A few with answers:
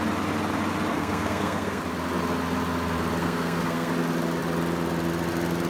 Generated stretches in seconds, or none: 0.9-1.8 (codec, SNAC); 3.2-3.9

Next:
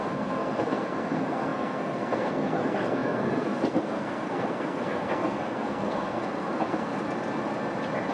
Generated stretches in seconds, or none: 0.0-6.9 (codec, SNAC)

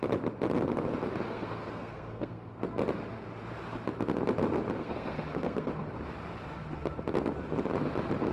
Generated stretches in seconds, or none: 1.3-2.6 (codec, SNAC); 4.8-5.7

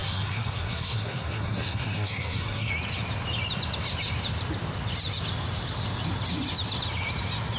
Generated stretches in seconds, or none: 0.0-2.7 (codec, SNAC)